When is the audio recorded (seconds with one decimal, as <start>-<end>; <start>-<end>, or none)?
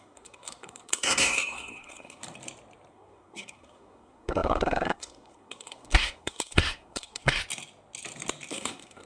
2.2-2.9; 7.4-8.5